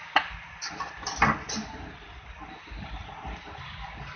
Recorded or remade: recorded